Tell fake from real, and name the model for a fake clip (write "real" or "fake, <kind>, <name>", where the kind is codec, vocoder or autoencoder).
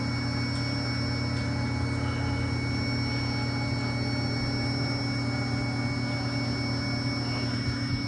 real